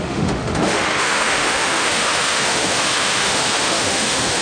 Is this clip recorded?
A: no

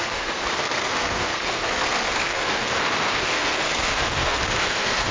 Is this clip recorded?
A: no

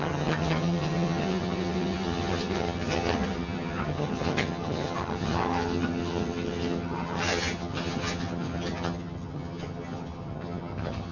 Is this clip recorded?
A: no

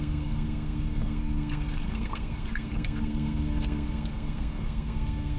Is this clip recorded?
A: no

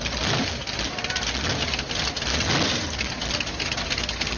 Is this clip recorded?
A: yes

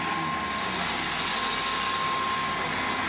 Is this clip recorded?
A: yes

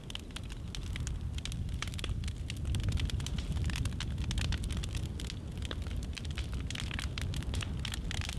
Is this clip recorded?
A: yes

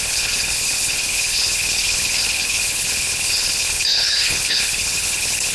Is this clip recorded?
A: no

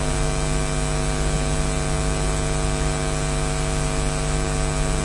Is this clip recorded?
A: yes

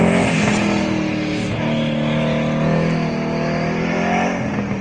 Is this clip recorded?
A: yes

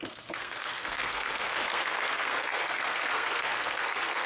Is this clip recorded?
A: no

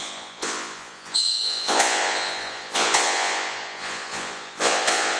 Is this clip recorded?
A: no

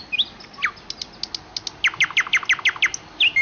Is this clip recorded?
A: yes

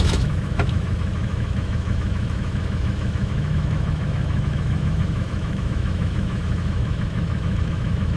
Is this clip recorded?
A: no